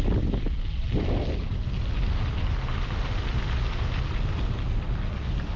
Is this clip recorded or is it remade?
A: recorded